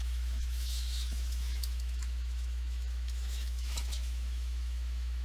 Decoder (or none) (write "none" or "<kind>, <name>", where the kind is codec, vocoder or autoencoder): autoencoder, DAC-VAE